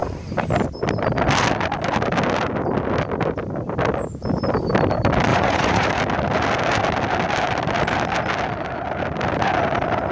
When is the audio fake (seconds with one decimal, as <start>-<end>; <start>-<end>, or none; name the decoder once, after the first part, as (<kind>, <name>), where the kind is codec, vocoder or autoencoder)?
5.3-5.9 (vocoder, Vocos)